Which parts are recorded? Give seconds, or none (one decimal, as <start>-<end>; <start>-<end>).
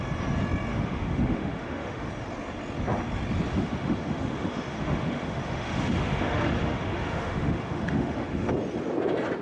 0.0-0.7; 2.1-3.5; 8.5-9.4